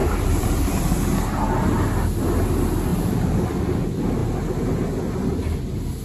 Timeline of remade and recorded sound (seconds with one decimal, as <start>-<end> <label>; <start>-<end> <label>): 0.0-0.8 remade; 0.8-2.9 recorded; 2.9-3.6 remade; 3.6-6.0 recorded